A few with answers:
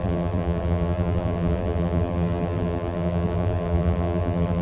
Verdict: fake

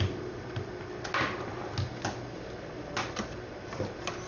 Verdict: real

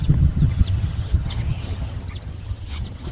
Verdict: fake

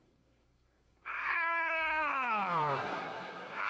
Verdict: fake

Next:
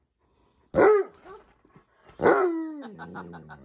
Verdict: real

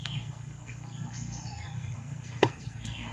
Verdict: fake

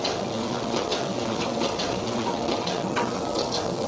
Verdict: fake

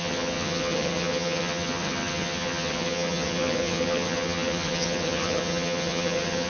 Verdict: fake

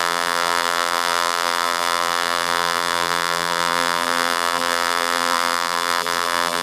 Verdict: fake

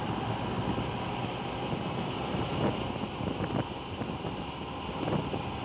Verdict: real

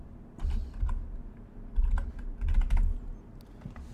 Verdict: real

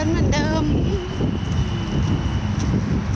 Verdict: real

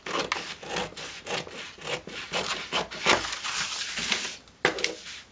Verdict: real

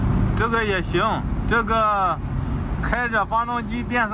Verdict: real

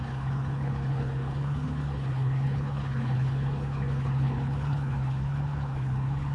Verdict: fake